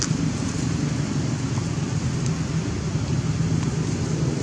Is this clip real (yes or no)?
yes